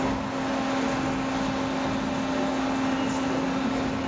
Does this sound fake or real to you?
real